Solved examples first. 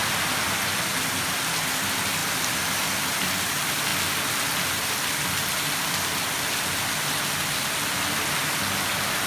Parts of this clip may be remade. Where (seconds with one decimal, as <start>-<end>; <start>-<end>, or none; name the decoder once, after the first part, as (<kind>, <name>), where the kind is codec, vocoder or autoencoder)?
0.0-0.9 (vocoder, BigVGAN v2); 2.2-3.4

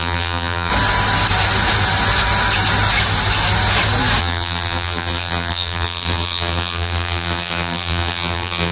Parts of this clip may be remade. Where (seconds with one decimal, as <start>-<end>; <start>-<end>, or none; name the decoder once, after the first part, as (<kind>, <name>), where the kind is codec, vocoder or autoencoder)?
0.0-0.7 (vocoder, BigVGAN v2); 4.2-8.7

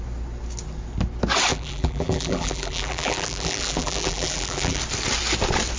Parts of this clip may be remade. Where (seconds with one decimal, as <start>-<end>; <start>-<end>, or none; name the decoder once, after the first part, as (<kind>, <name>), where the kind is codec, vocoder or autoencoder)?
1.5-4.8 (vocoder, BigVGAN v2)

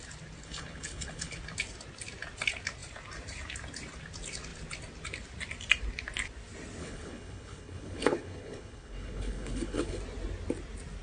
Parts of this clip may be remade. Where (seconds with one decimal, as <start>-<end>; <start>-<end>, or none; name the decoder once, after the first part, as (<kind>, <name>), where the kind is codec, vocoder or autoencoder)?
0.4-1.4 (codec, HILCodec); 6.8-10.0